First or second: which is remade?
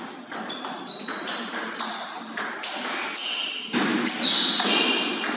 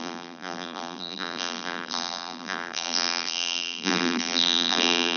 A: second